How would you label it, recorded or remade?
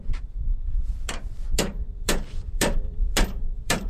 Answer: remade